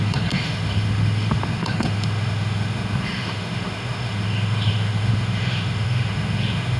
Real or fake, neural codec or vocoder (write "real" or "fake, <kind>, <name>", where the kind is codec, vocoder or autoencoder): fake, autoencoder, DAC-VAE